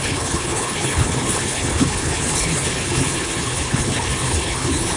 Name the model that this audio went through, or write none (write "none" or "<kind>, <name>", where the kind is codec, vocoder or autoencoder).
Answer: codec, HILCodec